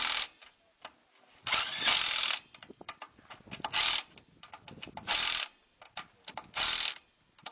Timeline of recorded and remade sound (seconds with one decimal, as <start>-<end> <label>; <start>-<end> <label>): 0.0-7.5 recorded